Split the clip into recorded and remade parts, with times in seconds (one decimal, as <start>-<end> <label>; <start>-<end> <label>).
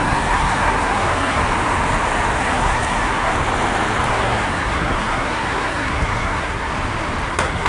0.0-1.4 remade; 1.4-2.4 recorded; 2.4-3.3 remade; 3.3-4.1 recorded; 4.1-6.7 remade; 6.7-7.3 recorded; 7.3-7.7 remade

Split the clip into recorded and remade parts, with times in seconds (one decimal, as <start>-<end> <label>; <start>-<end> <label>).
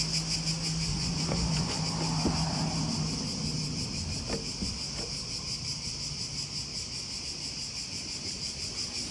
0.0-0.9 recorded; 0.9-1.8 remade; 1.8-9.1 recorded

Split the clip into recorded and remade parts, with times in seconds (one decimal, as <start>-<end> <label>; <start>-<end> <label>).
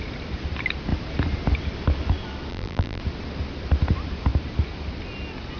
0.0-2.5 recorded; 2.5-3.0 remade; 3.0-5.6 recorded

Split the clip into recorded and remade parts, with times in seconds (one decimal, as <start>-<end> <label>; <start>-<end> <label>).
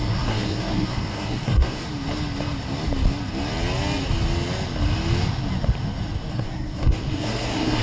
0.0-1.8 remade; 1.8-6.3 recorded; 6.3-7.8 remade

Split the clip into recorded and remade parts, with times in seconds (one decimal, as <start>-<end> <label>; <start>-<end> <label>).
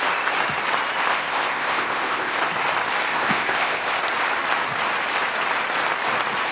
0.0-1.1 recorded; 1.1-2.4 remade; 2.4-3.1 recorded; 3.1-4.0 remade; 4.0-6.5 recorded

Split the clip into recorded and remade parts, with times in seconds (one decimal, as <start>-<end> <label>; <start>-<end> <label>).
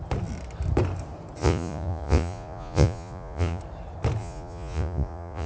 0.0-1.4 recorded; 1.4-3.6 remade; 3.6-4.2 recorded; 4.2-5.5 remade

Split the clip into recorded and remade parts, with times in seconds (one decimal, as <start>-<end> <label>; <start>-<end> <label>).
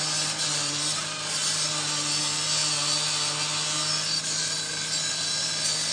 0.0-1.4 remade; 1.4-2.2 recorded; 2.2-2.6 remade; 2.6-5.2 recorded; 5.2-5.9 remade